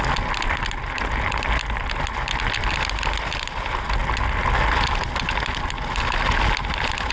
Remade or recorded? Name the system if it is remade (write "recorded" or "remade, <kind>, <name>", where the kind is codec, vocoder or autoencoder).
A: recorded